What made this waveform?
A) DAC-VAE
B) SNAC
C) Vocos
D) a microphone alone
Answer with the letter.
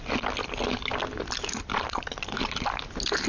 D